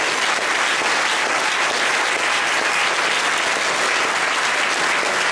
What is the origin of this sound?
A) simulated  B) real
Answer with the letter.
B